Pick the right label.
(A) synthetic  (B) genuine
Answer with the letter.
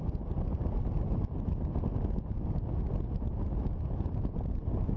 B